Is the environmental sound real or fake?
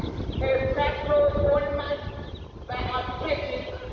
real